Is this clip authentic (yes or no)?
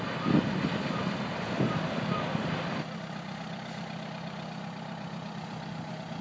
yes